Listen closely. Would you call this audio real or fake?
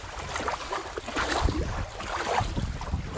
real